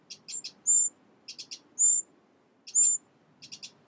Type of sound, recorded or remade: recorded